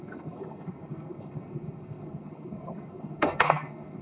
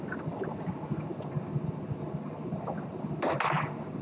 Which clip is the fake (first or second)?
first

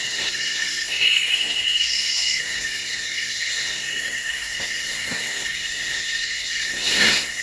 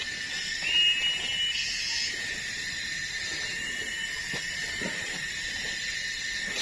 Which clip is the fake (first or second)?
first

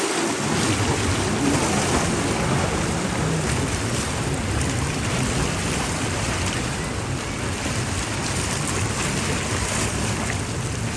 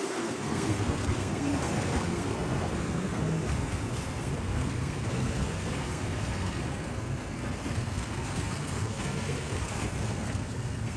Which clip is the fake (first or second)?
second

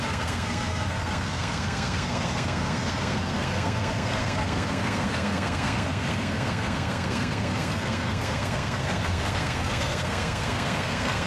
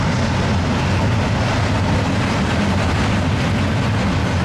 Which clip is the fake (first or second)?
first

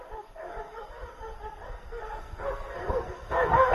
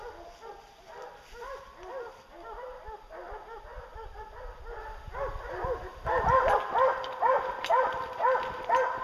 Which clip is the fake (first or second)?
first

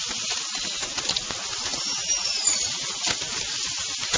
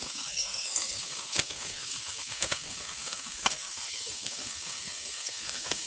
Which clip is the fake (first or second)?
second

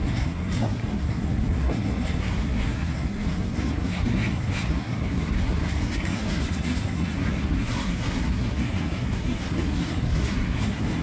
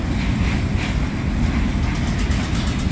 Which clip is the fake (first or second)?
first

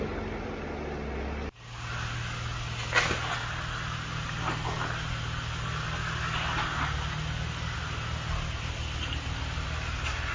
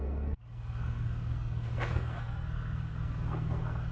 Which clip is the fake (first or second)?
second